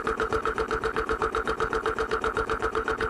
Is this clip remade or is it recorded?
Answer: remade